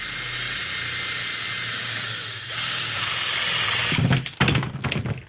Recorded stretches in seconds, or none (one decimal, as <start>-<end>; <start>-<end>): 0.0-1.8; 3.1-5.3